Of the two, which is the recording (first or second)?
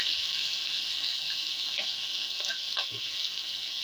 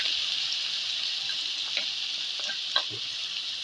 second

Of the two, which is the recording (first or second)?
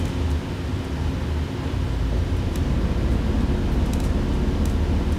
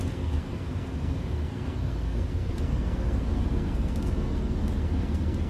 first